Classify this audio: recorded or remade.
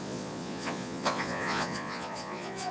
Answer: remade